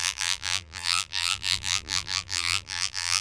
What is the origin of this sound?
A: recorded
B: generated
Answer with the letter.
B